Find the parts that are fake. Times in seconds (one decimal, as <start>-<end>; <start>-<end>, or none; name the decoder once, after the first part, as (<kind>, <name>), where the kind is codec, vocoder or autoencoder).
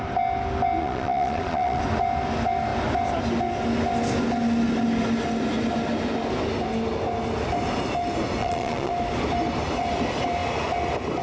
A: 0.8-1.8 (vocoder, Vocos); 8.4-8.9